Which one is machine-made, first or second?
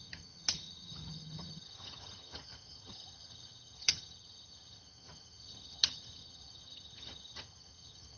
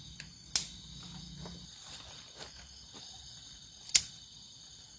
first